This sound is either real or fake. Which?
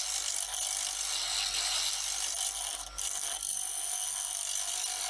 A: real